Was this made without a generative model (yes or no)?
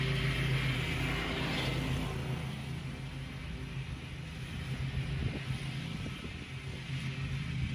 yes